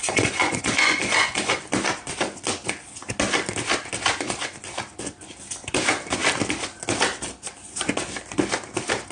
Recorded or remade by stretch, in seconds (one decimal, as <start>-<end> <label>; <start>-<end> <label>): 0.0-1.6 remade; 1.6-9.1 recorded